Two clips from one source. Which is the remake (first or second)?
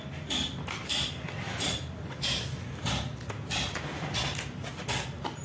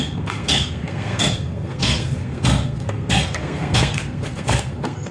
second